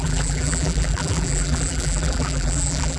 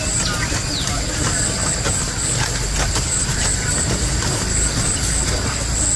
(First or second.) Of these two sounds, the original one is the second